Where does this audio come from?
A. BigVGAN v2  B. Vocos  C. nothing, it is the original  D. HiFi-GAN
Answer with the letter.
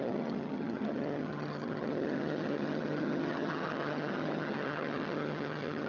D